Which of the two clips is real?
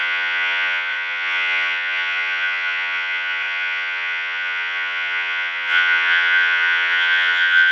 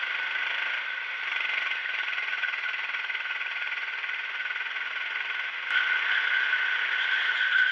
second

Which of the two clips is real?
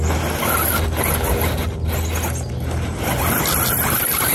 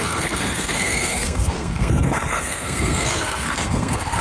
first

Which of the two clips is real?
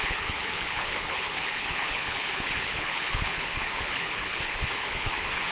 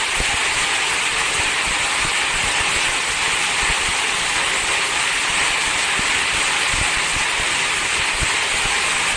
second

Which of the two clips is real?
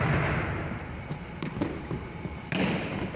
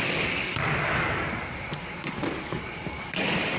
first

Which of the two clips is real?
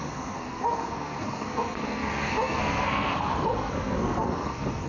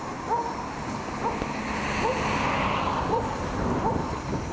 second